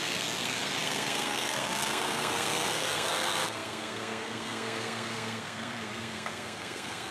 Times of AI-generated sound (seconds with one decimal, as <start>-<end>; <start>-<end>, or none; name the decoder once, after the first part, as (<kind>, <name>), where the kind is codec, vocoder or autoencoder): 0.0-7.1 (codec, SNAC)